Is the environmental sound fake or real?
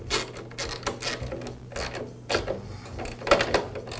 real